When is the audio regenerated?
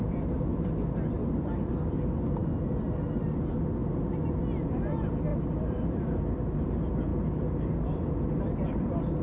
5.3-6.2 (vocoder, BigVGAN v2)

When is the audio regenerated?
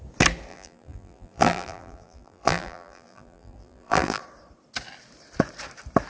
0.5-4.2 (vocoder, BigVGAN v2)